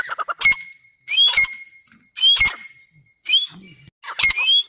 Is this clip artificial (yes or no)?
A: no